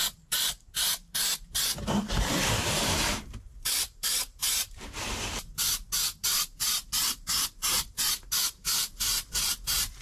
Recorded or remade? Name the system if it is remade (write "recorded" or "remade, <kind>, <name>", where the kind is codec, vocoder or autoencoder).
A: remade, vocoder, BigVGAN v2